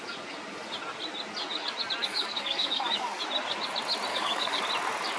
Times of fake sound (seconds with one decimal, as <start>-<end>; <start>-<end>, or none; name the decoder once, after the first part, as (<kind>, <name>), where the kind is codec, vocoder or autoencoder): 2.0-3.2 (codec, DAC); 4.1-4.6